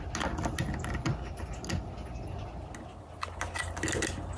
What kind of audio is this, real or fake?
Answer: real